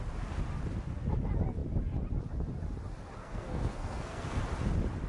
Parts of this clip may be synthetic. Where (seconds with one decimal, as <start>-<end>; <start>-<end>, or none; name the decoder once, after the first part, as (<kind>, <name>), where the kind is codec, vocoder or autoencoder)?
3.2-4.4 (codec, SNAC)